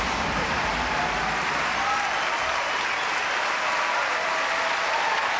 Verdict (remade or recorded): recorded